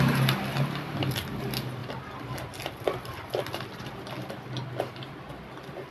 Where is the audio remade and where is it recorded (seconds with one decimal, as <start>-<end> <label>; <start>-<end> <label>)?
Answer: 0.0-5.9 recorded